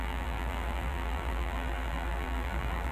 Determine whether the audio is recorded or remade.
remade